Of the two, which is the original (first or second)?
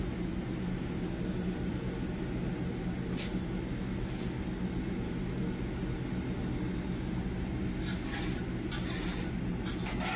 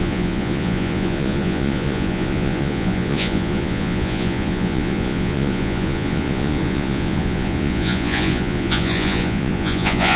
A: first